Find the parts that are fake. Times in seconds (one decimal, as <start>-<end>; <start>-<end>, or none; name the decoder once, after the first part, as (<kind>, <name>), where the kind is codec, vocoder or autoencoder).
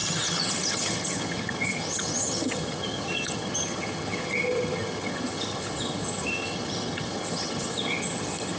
0.0-8.6 (vocoder, HiFi-GAN)